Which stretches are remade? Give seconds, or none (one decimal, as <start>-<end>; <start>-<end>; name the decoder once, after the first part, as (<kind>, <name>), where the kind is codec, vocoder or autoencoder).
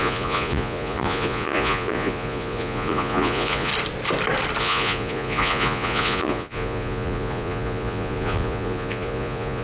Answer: 0.0-3.7 (vocoder, Vocos); 4.6-9.6